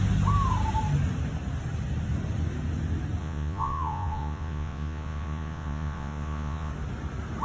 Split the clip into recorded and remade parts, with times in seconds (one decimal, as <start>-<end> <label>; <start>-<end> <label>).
0.0-3.2 recorded; 3.2-6.7 remade; 6.7-7.4 recorded